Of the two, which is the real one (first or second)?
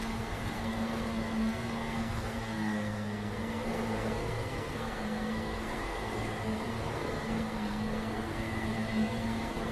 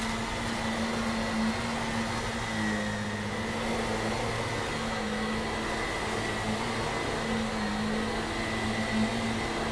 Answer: second